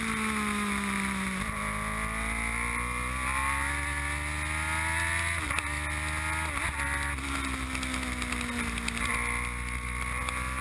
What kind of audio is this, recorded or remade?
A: recorded